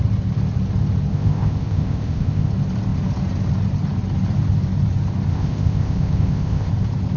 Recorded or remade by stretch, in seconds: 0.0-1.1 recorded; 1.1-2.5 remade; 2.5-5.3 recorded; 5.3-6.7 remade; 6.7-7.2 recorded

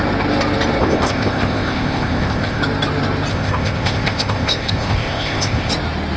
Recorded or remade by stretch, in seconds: 0.0-0.8 recorded; 0.8-2.6 remade; 2.6-3.3 recorded; 3.3-5.7 remade; 5.7-6.2 recorded

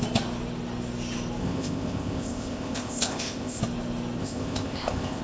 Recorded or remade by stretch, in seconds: 0.0-1.4 recorded; 1.4-3.6 remade; 3.6-4.2 recorded; 4.2-5.2 remade

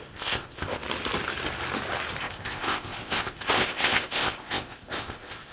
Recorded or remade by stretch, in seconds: 0.0-0.8 remade; 0.8-2.2 recorded; 2.2-5.5 remade

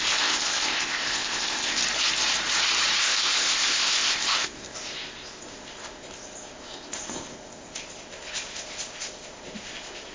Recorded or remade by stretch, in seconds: 0.0-1.8 remade; 1.8-3.0 recorded; 3.0-10.1 remade

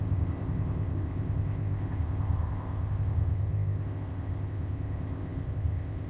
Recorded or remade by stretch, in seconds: 0.0-6.1 remade

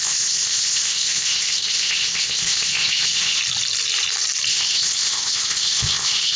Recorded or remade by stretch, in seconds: 0.0-3.4 remade; 3.4-4.5 recorded; 4.5-6.4 remade